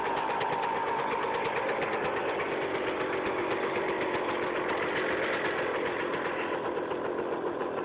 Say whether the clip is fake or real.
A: real